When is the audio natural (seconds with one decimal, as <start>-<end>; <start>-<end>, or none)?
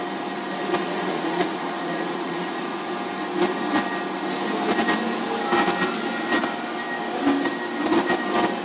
0.0-0.8; 2.9-8.6